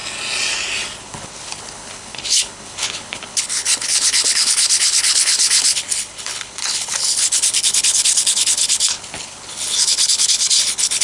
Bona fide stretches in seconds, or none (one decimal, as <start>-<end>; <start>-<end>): 0.0-1.0